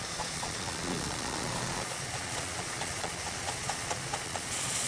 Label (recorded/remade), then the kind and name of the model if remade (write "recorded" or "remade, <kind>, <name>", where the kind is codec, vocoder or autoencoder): remade, vocoder, Vocos